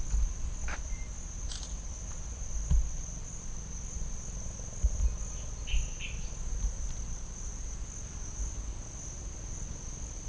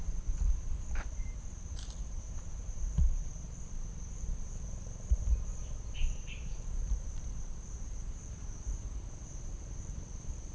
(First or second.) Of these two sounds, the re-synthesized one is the second